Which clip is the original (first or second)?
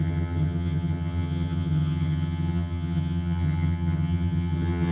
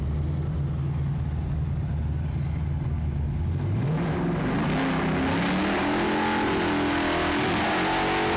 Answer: second